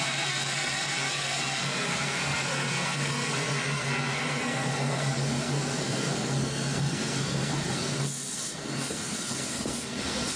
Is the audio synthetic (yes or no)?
yes